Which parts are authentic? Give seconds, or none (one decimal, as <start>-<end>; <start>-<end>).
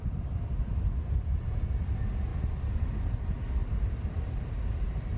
0.0-2.3; 2.9-3.6